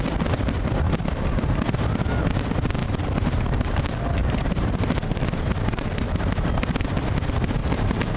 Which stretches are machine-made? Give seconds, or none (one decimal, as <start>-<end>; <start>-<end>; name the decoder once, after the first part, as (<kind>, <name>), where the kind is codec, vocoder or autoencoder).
2.8-3.8 (vocoder, BigVGAN v2); 4.2-6.3; 7.6-8.2